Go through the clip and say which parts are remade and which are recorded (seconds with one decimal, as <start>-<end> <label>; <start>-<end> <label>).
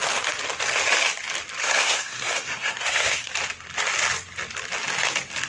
0.0-1.6 recorded; 1.6-3.3 remade; 3.3-5.5 recorded